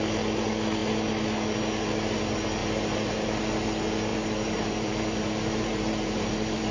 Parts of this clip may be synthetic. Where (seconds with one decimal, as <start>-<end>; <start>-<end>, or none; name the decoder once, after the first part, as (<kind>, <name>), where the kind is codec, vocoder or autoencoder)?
2.6-3.4 (vocoder, BigVGAN v2); 4.1-6.7